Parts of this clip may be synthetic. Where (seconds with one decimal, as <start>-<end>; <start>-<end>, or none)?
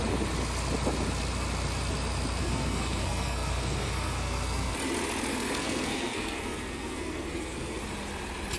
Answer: 2.4-4.7; 5.3-7.8